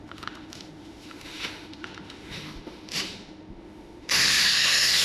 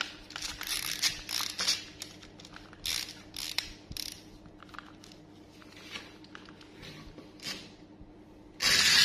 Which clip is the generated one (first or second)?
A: first